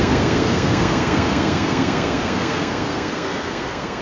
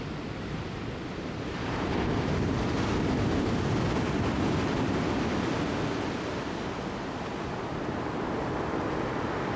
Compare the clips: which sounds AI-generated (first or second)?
first